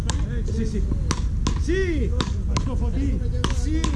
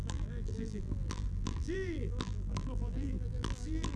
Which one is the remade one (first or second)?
second